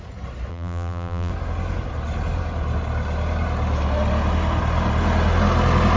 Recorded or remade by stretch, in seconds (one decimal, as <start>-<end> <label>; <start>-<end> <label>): 0.0-0.5 recorded; 0.5-1.3 remade; 1.3-6.0 recorded